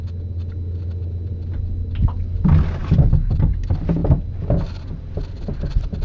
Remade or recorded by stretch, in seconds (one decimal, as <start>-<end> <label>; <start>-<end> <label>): 0.0-6.0 recorded